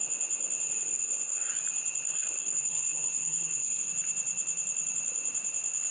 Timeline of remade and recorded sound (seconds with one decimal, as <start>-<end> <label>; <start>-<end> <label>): 0.0-0.9 recorded; 0.9-1.5 remade; 1.5-2.1 recorded; 2.1-3.9 remade; 3.9-5.9 recorded

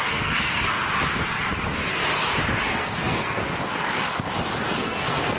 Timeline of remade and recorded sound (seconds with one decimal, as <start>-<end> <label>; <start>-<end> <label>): 0.0-0.8 remade; 0.8-2.7 recorded; 2.7-3.4 remade; 3.4-4.8 recorded; 4.8-5.4 remade

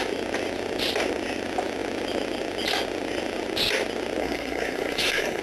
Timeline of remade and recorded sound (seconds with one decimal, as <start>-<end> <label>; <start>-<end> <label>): 0.0-4.2 recorded; 4.2-5.4 remade

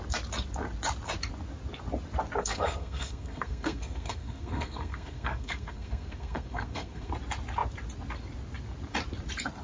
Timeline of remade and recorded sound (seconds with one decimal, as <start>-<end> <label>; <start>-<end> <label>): 0.0-2.4 recorded; 2.4-7.1 remade; 7.1-9.6 recorded

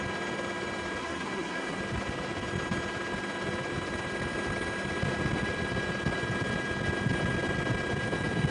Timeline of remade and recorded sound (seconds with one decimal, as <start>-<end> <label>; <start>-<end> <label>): 0.0-1.0 recorded; 1.0-1.8 remade; 1.8-8.5 recorded

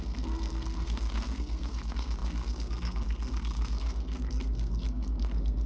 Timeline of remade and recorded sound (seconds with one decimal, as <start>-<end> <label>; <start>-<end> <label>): 0.0-5.7 remade

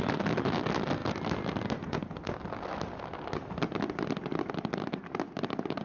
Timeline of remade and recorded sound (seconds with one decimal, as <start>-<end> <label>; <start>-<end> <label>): 0.0-5.8 recorded

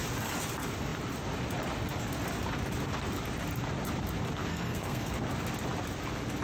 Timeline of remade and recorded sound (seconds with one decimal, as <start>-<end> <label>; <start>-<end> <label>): 0.0-4.5 recorded; 4.5-5.2 remade; 5.2-6.4 recorded